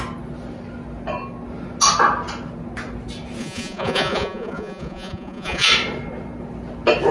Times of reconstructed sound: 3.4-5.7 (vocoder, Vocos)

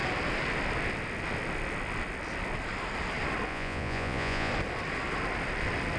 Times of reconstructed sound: 3.5-4.5 (vocoder, Vocos)

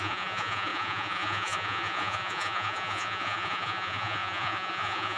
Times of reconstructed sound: 0.0-5.2 (vocoder, Vocos)

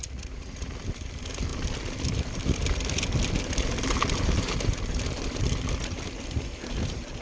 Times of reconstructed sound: 0.0-0.7 (vocoder, Vocos)

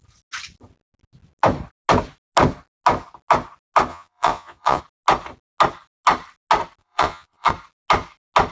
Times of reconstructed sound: 3.9-4.8 (vocoder, Vocos); 6.8-7.5